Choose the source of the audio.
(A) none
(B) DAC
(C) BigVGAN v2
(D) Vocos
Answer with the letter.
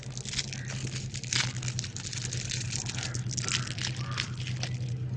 A